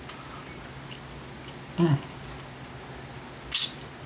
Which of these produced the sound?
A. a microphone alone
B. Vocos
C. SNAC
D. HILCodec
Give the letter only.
A